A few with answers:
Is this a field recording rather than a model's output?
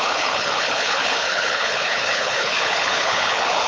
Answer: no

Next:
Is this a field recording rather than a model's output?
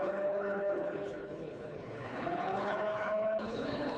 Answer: no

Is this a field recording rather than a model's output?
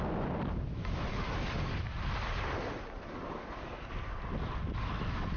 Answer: yes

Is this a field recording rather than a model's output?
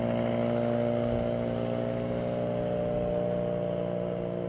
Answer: yes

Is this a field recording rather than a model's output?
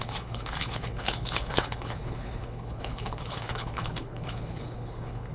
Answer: no